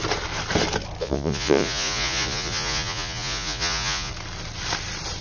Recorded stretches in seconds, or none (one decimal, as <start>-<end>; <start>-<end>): 0.0-1.0; 4.1-5.2